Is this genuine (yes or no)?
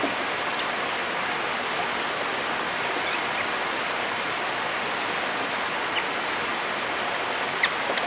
yes